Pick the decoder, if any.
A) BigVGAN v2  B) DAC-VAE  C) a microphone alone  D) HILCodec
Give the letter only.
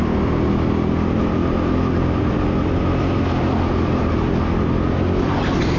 C